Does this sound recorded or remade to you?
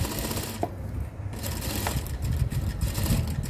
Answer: recorded